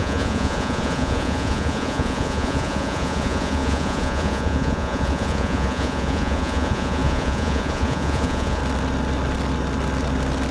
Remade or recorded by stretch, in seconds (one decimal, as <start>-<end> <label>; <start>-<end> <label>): 0.0-8.6 remade; 8.6-10.5 recorded